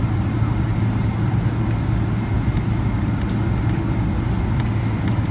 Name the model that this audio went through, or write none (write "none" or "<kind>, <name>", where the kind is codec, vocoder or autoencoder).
none